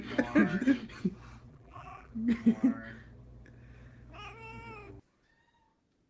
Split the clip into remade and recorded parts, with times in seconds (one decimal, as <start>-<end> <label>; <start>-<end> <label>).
0.0-1.5 recorded; 1.5-2.1 remade; 2.1-6.1 recorded